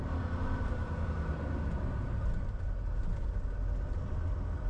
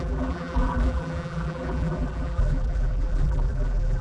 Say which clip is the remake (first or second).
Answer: second